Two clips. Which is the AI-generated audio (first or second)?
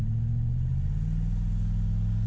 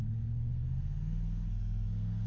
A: second